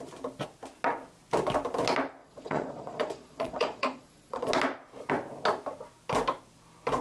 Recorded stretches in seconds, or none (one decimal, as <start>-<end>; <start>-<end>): 0.0-2.2; 4.5-7.0